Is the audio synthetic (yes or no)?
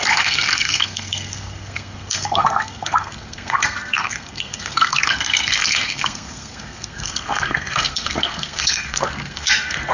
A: yes